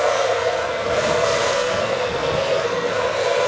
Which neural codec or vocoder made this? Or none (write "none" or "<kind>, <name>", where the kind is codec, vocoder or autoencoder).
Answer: codec, SNAC